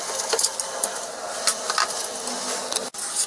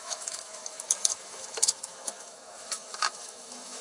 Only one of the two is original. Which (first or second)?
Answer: first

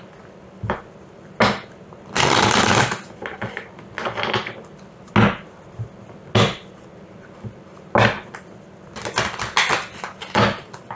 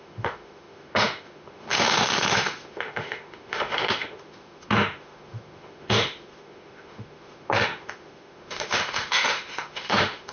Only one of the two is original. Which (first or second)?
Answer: first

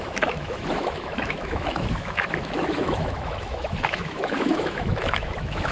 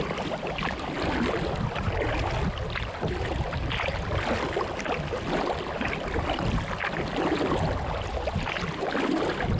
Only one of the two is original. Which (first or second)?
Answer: second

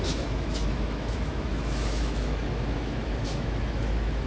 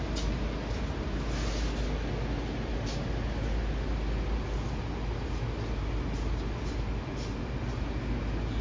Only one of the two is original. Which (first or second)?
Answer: second